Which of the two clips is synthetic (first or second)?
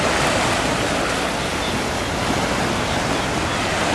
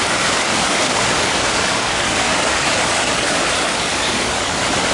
second